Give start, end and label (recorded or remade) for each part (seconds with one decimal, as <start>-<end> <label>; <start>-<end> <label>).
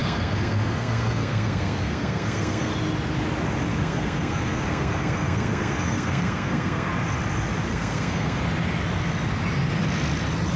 0.0-2.7 remade; 2.7-3.7 recorded; 3.7-6.9 remade; 6.9-7.7 recorded; 7.7-8.4 remade; 8.4-10.6 recorded